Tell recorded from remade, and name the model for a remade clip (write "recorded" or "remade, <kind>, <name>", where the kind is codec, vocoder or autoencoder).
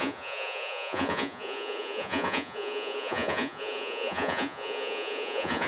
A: remade, vocoder, Vocos